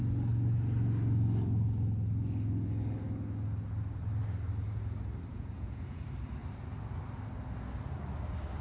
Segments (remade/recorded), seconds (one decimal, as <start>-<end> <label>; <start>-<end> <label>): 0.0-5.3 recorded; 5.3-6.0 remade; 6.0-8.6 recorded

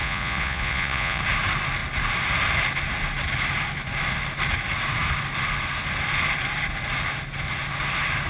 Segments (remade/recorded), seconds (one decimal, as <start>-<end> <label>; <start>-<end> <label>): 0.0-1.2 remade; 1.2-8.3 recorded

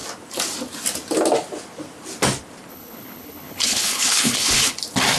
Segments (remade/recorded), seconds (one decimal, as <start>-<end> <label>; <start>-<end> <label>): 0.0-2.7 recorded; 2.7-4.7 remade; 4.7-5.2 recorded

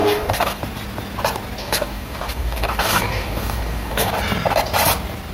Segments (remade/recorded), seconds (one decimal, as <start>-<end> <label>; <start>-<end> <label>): 0.0-0.6 remade; 0.6-1.6 recorded; 1.6-4.1 remade; 4.1-5.3 recorded

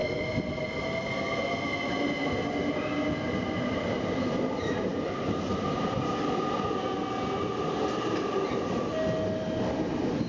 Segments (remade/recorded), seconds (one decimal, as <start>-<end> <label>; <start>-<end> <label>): 0.0-10.3 recorded